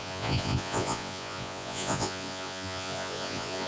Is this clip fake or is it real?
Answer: fake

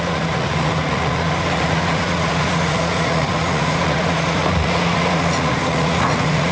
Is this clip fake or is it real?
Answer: fake